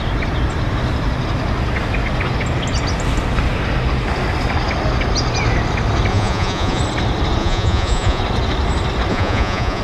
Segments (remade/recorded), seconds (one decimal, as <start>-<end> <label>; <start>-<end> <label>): 0.0-6.1 recorded; 6.1-6.8 remade; 6.8-7.4 recorded; 7.4-8.2 remade; 8.2-9.1 recorded; 9.1-9.8 remade